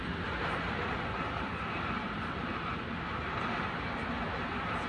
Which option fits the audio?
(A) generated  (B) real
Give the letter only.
B